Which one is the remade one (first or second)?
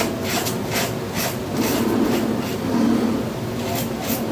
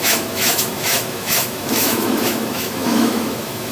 second